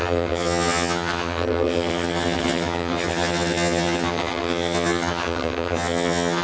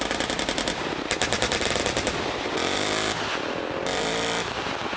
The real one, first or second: second